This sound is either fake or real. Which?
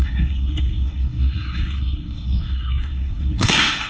fake